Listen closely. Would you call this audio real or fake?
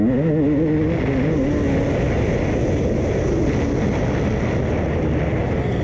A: real